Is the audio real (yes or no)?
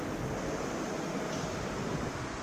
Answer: yes